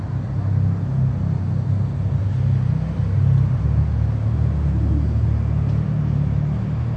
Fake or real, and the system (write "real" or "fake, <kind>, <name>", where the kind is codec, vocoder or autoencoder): real